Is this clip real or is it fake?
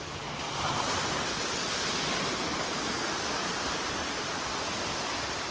real